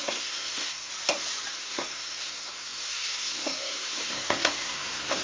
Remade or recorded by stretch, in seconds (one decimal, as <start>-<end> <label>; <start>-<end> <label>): 0.0-0.9 remade; 0.9-1.5 recorded; 1.5-5.2 remade